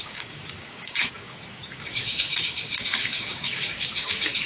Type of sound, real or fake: fake